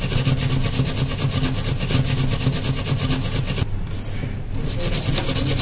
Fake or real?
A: real